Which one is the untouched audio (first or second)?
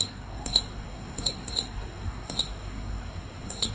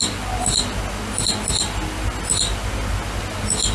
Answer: second